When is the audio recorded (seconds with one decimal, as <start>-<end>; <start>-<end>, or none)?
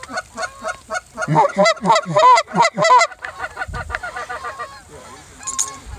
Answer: 0.0-6.0